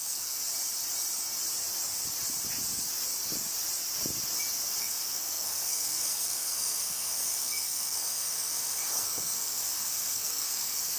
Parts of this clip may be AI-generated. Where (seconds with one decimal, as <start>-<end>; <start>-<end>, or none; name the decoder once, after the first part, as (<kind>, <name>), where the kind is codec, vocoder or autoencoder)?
0.0-0.4 (codec, SNAC); 4.8-11.0